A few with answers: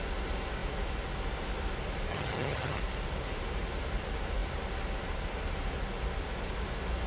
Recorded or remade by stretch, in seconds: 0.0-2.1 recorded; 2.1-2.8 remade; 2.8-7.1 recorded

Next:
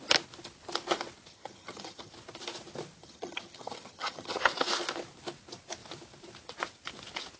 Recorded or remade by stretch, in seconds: 0.0-1.3 recorded; 1.3-2.1 remade; 2.1-3.0 recorded; 3.0-4.5 remade; 4.5-7.4 recorded